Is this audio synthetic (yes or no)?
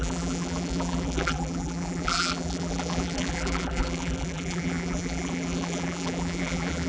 yes